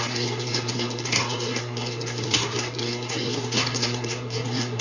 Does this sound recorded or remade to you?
remade